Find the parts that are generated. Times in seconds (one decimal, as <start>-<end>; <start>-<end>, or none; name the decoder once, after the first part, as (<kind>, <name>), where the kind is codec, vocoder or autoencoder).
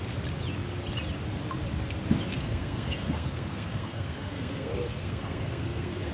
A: 2.3-6.1 (codec, SNAC)